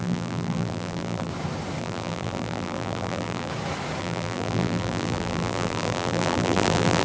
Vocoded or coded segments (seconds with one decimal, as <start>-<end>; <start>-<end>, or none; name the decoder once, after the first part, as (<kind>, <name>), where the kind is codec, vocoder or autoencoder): 0.0-1.3 (vocoder, BigVGAN v2); 1.8-3.5; 4.0-7.0